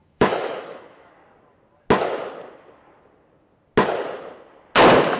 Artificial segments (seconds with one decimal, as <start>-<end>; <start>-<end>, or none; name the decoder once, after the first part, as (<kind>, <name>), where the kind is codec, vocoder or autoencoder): 0.0-1.1 (autoencoder, DAC-VAE)